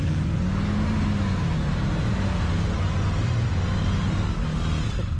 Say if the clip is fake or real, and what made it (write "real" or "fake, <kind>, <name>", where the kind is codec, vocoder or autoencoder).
real